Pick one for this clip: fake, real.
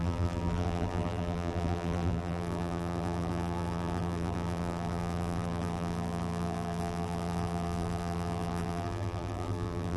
fake